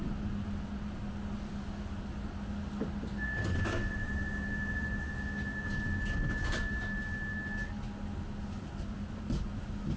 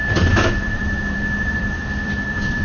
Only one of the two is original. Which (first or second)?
first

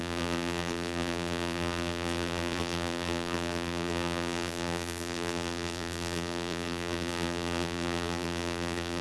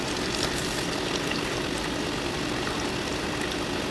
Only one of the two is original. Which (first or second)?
second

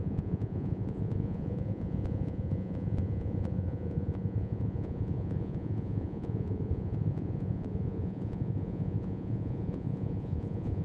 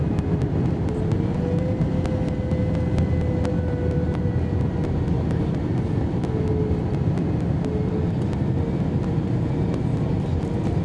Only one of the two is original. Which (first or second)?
second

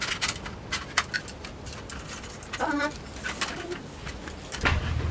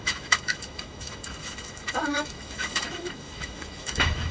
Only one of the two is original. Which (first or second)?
first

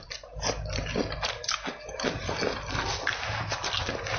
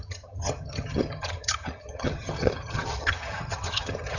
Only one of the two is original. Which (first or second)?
first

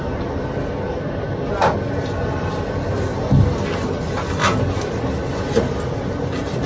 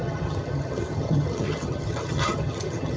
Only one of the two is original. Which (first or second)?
first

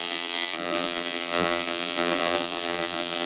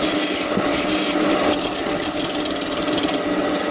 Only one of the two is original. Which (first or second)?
second